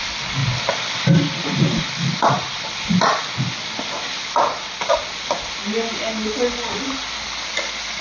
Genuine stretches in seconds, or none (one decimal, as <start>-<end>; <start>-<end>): 0.0-8.0